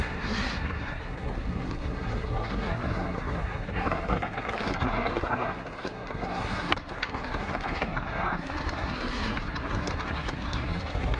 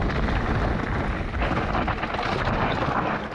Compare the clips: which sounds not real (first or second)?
first